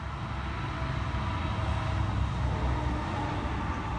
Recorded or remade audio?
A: recorded